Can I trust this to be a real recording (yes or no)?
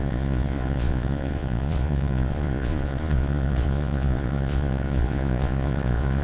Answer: no